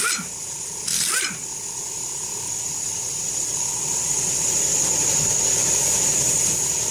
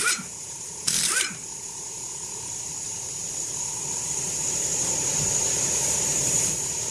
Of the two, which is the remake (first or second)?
second